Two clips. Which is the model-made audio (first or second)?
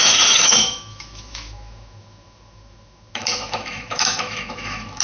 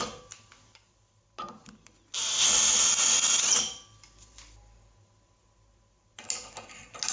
first